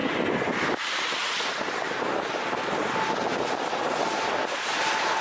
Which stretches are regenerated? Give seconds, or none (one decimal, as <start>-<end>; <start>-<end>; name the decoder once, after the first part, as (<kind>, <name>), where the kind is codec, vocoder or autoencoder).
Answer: none